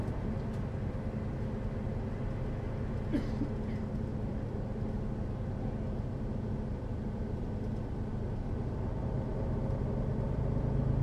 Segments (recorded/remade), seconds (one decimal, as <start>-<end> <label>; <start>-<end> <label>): 0.0-11.0 recorded